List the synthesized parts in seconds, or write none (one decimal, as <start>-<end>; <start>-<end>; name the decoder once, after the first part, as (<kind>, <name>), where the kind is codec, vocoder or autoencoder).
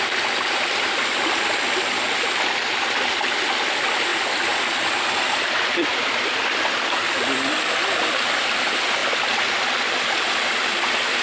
none